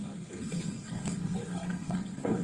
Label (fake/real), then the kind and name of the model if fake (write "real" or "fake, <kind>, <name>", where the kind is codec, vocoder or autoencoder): fake, codec, SNAC